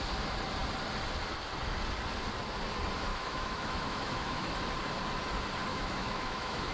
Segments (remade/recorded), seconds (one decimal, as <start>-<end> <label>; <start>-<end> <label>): 0.0-3.1 recorded; 3.1-4.5 remade; 4.5-5.7 recorded; 5.7-6.7 remade